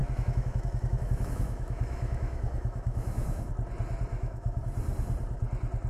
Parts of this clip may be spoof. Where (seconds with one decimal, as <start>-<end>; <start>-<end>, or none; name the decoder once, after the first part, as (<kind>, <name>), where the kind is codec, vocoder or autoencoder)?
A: 0.0-3.5 (autoencoder, DAC-VAE); 4.1-4.6